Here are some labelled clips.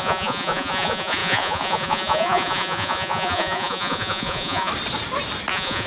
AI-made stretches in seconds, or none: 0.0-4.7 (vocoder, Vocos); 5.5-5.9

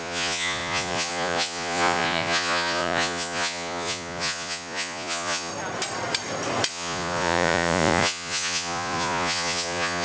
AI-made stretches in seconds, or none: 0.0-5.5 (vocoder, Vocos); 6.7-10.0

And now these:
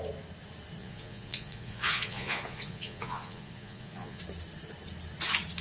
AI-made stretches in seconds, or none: 0.8-4.2 (vocoder, Vocos)